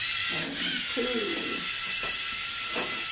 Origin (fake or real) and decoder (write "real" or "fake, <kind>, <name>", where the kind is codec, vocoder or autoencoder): real